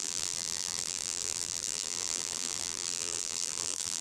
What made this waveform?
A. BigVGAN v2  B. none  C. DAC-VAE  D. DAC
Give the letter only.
A